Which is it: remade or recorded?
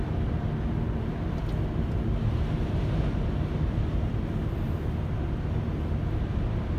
recorded